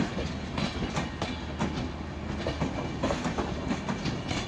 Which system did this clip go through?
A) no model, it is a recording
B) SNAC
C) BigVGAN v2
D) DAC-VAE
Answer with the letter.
A